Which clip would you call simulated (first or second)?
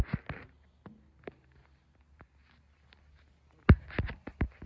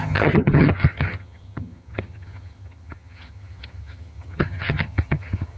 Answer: second